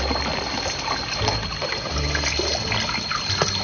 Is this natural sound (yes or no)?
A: yes